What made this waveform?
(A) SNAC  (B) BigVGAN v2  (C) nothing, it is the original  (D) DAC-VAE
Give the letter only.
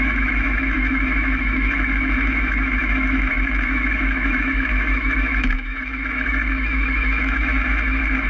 D